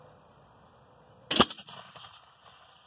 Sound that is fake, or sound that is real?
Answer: real